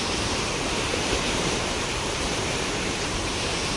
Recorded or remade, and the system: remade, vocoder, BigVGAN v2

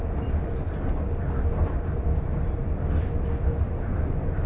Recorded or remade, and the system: recorded